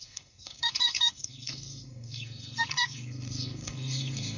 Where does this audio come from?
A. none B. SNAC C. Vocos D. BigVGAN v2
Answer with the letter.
B